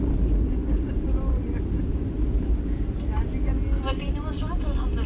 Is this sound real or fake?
real